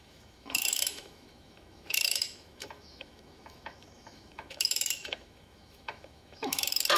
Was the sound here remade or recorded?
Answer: remade